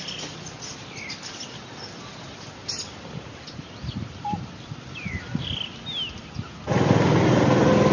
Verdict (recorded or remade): recorded